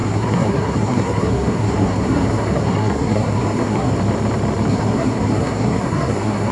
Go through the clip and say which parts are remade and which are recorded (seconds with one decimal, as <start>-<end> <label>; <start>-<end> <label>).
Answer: 0.0-3.9 remade; 3.9-4.7 recorded; 4.7-6.5 remade